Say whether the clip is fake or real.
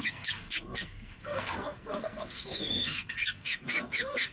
fake